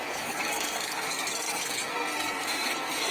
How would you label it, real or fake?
fake